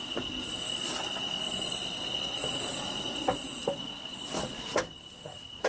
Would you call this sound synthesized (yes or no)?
no